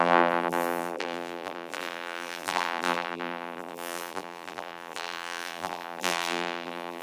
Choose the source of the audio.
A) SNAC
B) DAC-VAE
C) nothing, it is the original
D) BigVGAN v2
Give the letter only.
D